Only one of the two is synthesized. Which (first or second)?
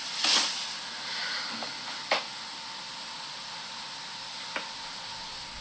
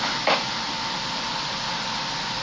second